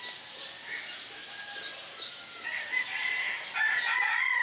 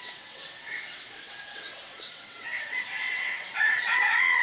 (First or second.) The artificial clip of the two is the second